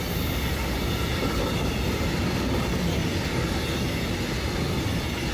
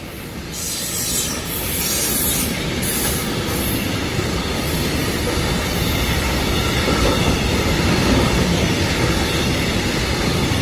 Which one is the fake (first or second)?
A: second